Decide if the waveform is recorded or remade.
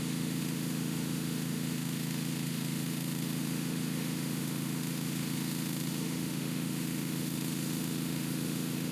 remade